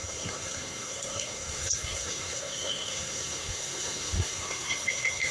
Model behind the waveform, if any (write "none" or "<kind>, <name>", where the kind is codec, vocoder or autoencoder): codec, SNAC